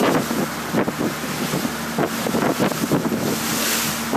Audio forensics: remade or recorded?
recorded